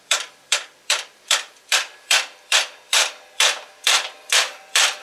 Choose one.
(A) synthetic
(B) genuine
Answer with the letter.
A